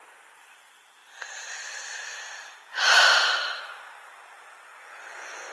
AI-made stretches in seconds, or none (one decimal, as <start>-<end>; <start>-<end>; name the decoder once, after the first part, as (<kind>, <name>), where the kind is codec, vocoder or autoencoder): 4.7-5.5 (vocoder, Vocos)